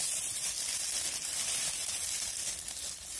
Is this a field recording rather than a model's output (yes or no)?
yes